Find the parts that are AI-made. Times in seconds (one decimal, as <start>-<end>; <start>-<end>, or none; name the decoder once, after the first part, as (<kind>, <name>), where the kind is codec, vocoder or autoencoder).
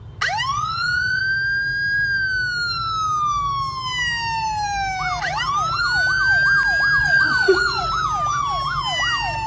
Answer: 0.5-1.2 (vocoder, Vocos); 7.0-7.9